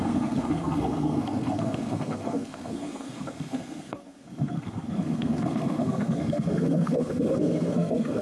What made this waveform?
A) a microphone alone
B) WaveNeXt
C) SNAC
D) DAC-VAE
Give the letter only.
C